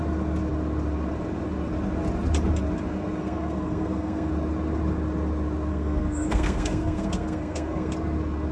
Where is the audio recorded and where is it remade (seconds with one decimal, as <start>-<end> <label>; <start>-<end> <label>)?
0.0-3.2 recorded; 3.2-4.3 remade; 4.3-5.7 recorded; 5.7-7.9 remade; 7.9-8.5 recorded

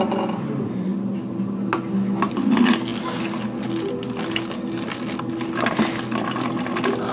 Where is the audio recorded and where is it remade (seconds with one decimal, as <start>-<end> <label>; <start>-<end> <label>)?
0.0-7.1 recorded

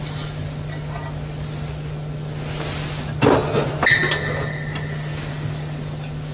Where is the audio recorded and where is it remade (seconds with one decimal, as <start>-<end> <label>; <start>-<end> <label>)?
0.0-6.3 recorded

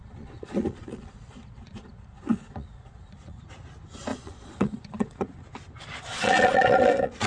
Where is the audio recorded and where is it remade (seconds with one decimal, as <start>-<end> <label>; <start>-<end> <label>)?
0.0-3.4 remade; 3.4-4.1 recorded; 4.1-5.4 remade; 5.4-6.1 recorded; 6.1-7.3 remade

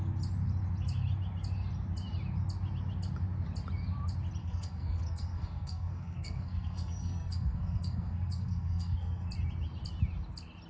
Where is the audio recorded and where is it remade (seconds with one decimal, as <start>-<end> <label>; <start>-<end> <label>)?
0.0-4.4 recorded; 4.4-9.3 remade; 9.3-10.7 recorded

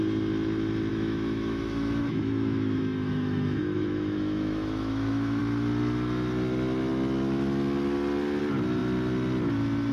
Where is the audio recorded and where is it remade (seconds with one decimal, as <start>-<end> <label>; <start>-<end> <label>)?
0.0-0.9 recorded; 0.9-5.4 remade; 5.4-9.9 recorded